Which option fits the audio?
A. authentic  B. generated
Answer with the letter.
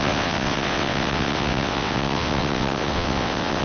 B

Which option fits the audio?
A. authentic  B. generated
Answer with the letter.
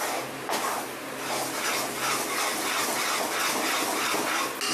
A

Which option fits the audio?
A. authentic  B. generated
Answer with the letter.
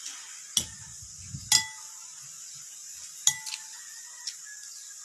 A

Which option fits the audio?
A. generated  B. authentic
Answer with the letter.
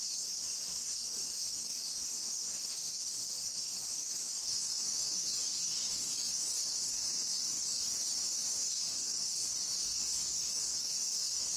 A